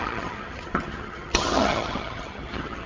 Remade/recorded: remade